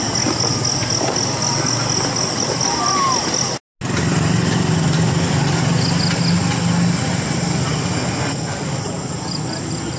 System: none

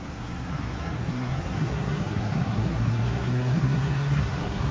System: codec, SNAC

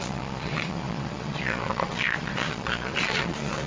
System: vocoder, Vocos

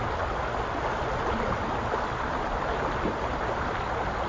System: none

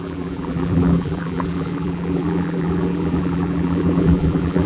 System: vocoder, BigVGAN v2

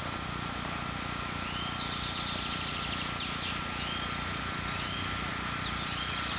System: none